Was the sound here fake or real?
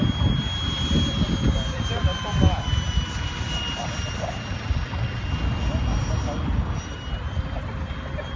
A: real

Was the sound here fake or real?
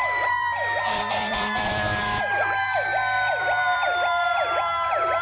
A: fake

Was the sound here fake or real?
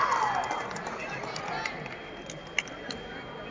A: real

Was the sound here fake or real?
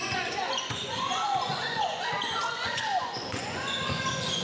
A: fake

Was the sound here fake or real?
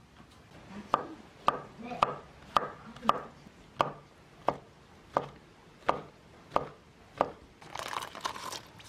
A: real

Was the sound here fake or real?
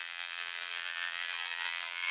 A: fake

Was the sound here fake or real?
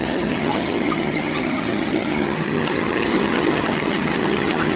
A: fake